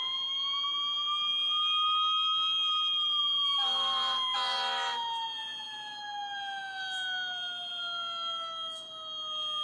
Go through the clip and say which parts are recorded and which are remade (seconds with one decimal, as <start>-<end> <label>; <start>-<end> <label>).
0.0-9.6 recorded